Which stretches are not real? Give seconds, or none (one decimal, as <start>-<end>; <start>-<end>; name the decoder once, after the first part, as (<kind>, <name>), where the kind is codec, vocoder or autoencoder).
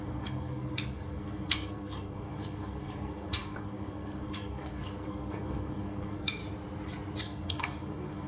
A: 0.0-6.4 (codec, SNAC); 7.2-8.3